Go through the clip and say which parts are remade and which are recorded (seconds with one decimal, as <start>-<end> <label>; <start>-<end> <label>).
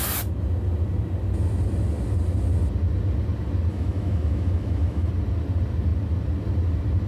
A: 0.0-3.7 recorded; 3.7-5.1 remade; 5.1-7.1 recorded